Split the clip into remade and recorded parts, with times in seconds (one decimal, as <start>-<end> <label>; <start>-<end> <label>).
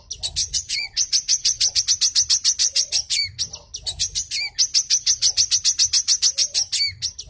0.0-0.4 recorded; 0.4-1.8 remade; 1.8-2.6 recorded; 2.6-3.2 remade; 3.2-7.3 recorded